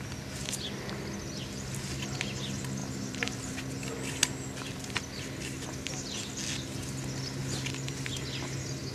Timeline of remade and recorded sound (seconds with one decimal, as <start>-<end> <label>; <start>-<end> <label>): 0.0-2.8 recorded; 2.8-3.7 remade; 3.7-7.4 recorded; 7.4-8.2 remade; 8.2-8.9 recorded